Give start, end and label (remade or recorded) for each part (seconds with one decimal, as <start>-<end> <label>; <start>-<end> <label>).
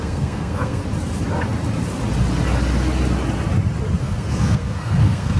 0.0-0.8 remade; 0.8-4.0 recorded; 4.0-5.4 remade